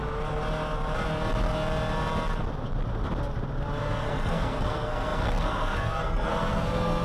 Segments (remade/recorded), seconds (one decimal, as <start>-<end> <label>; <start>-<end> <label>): 0.0-3.8 recorded; 3.8-7.0 remade